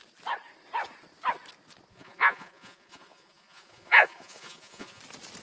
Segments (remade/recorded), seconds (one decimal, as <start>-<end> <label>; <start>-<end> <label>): 0.0-1.9 recorded; 1.9-5.0 remade; 5.0-5.4 recorded